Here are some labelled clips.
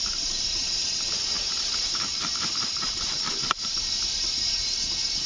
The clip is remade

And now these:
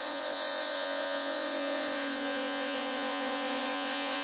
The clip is remade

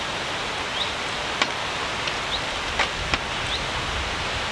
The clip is recorded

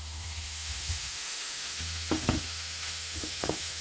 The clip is remade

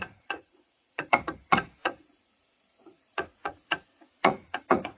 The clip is remade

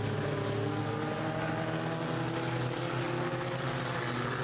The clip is recorded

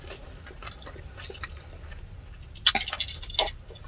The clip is recorded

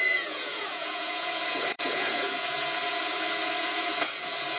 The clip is remade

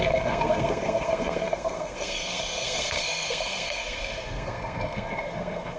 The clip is remade